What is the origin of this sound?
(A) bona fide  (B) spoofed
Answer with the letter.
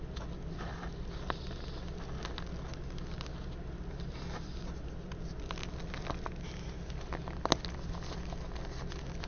A